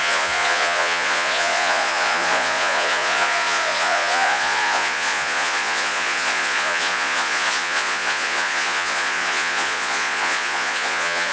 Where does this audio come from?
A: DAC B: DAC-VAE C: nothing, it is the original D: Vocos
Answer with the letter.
D